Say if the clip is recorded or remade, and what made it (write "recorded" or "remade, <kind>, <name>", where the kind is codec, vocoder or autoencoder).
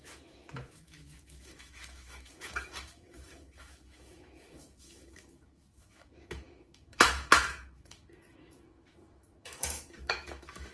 remade, autoencoder, DAC-VAE